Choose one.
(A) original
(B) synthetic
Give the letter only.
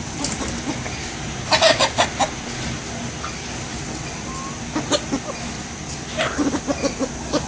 A